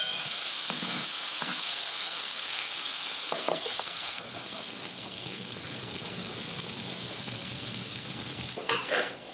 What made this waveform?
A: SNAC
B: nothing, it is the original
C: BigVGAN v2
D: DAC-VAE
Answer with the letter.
A